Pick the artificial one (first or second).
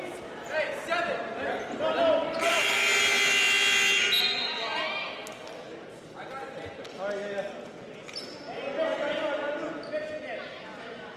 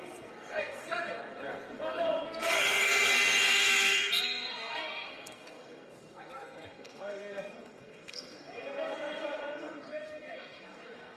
second